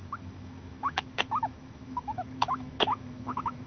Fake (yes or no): yes